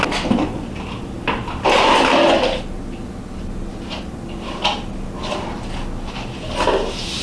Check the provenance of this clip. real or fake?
real